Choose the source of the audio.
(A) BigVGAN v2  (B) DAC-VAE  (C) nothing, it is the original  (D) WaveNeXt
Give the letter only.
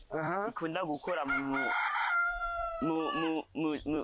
A